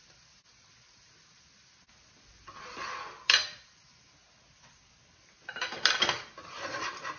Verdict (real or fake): real